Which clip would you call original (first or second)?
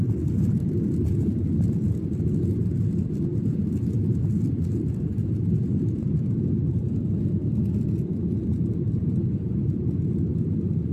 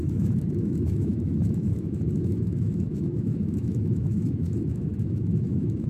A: first